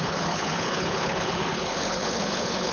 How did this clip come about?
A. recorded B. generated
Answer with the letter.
B